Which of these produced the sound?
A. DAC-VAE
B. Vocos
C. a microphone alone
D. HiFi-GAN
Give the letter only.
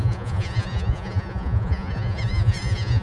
B